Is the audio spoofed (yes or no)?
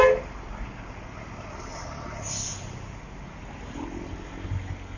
no